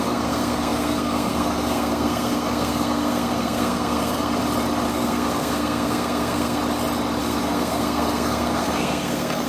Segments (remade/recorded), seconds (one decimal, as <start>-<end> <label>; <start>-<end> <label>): 0.0-4.4 remade; 4.4-4.9 recorded; 4.9-6.6 remade; 6.6-7.2 recorded; 7.2-9.5 remade